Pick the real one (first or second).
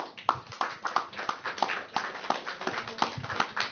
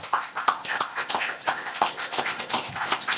first